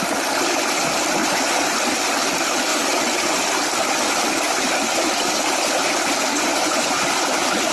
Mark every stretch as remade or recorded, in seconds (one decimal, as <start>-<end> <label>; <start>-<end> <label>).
0.0-1.2 recorded; 1.2-1.8 remade; 1.8-2.7 recorded; 2.7-3.4 remade; 3.4-6.3 recorded; 6.3-7.1 remade; 7.1-7.7 recorded